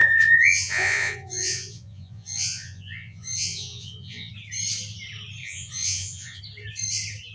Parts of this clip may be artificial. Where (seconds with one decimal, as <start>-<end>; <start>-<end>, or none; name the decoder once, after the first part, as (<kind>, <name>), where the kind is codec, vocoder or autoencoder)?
0.0-4.3 (vocoder, Vocos); 5.4-6.4